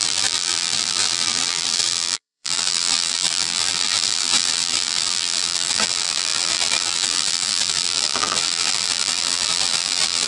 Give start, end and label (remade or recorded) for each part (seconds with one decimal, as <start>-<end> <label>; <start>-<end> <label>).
0.0-10.3 remade